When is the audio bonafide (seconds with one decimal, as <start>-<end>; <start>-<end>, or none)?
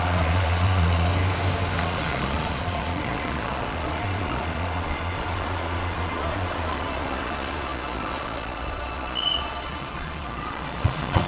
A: 1.1-1.8